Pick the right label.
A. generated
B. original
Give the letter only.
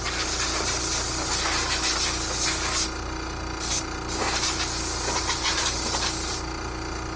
B